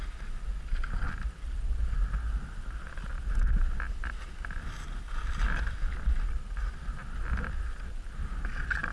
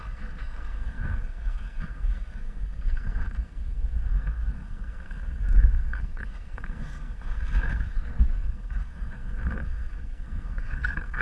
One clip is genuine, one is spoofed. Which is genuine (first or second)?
first